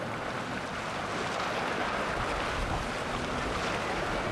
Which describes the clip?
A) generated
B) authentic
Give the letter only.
B